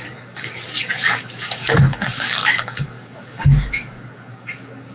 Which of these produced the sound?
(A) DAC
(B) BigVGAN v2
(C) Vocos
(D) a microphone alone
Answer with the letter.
A